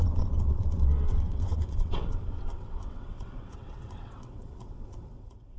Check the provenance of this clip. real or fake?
fake